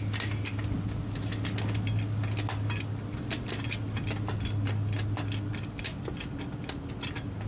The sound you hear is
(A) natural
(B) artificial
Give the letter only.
A